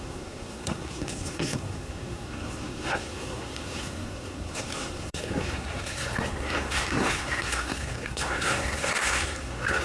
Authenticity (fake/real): fake